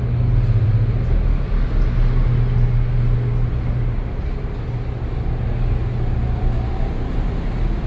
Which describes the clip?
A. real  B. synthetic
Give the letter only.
A